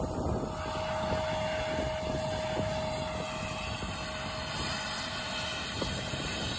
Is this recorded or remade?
recorded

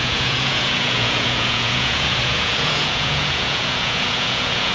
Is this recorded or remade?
remade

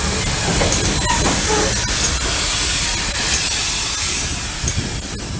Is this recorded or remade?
recorded